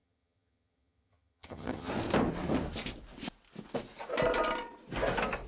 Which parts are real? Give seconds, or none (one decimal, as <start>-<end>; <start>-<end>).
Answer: 1.9-5.5